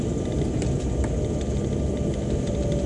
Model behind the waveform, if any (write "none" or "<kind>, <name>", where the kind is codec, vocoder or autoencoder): none